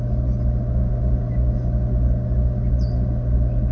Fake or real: real